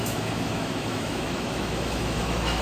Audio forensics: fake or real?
fake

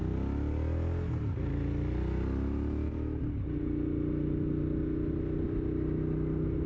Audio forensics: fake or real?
real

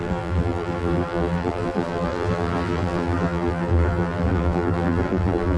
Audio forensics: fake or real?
fake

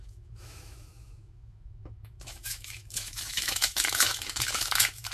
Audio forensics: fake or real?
fake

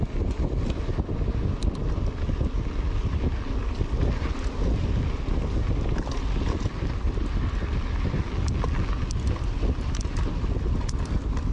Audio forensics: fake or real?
real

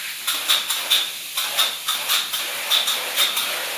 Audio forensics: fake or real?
real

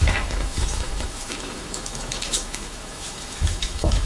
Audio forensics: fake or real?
fake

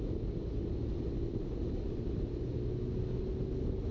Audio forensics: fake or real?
real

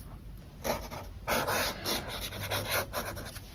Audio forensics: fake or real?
real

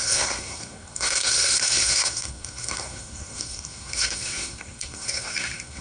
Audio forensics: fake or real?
fake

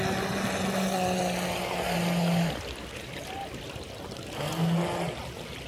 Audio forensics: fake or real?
real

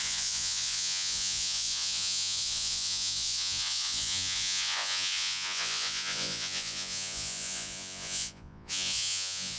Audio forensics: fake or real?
fake